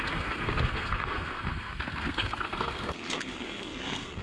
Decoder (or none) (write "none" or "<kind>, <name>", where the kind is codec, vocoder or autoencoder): codec, SNAC